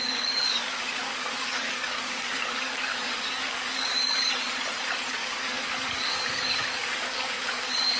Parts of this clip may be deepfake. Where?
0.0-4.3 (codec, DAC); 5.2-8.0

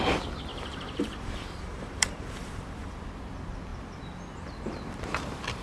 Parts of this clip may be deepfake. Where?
0.5-2.9 (vocoder, BigVGAN v2)

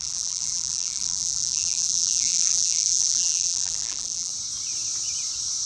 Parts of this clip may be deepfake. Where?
0.0-4.3 (vocoder, BigVGAN v2)

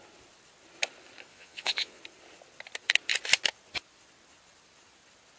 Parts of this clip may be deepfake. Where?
1.3-2.0 (vocoder, Vocos)

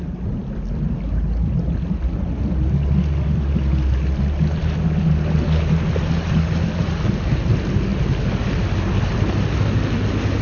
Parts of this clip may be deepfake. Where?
none

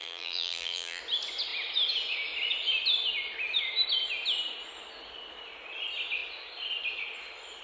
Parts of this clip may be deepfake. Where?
0.0-1.0 (vocoder, BigVGAN v2)

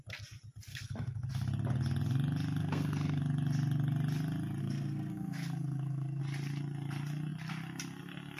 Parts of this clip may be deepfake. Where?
0.7-1.3 (codec, SNAC); 2.6-3.2; 4.6-6.2